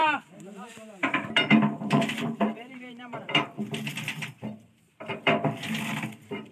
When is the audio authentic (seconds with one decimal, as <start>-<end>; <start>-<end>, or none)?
none